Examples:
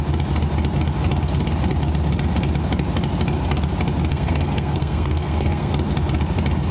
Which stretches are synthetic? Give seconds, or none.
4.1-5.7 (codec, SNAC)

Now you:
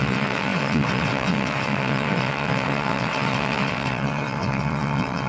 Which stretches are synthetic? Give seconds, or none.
0.0-5.3 (vocoder, WaveNeXt)

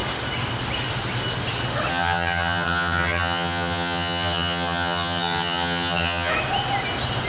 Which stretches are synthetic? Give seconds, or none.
1.9-6.3 (vocoder, HiFi-GAN)

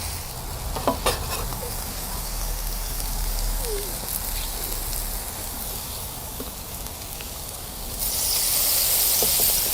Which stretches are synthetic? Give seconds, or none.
1.5-4.0 (codec, DAC); 5.4-8.0

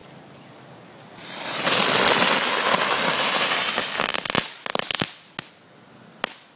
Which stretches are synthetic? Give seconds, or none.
none

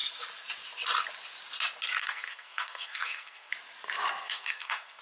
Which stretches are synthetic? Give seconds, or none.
2.0-3.5 (codec, SNAC); 4.2-5.0

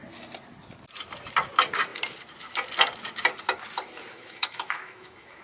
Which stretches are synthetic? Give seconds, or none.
4.1-5.4 (autoencoder, DAC-VAE)

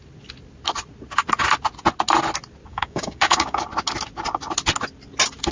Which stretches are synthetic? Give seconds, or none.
2.7-3.6 (codec, DAC)